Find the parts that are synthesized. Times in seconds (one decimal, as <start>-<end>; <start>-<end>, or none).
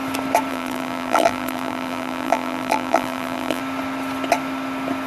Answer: 0.5-3.6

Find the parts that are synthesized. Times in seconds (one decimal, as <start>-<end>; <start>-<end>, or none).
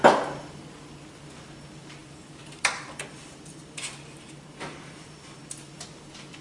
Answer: 2.0-5.4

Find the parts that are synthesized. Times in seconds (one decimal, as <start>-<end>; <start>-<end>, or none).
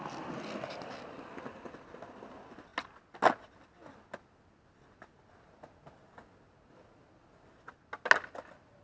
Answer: none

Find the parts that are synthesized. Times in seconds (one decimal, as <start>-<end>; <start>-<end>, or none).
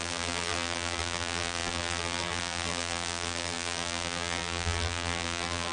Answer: 0.0-5.7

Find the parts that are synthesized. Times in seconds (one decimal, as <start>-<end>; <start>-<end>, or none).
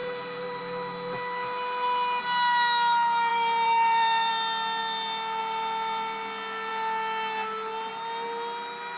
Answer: 0.0-0.6; 3.3-4.3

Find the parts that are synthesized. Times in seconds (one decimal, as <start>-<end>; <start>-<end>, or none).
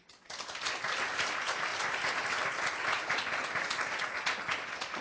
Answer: none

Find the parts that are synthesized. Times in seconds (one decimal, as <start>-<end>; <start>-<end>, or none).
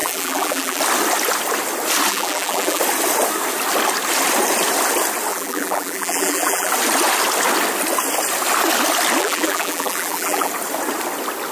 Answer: 0.0-0.8; 2.1-2.8; 5.3-6.7; 9.2-10.5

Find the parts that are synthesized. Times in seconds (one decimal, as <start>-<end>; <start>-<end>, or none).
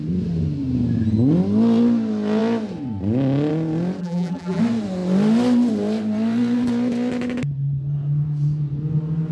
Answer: 4.0-4.6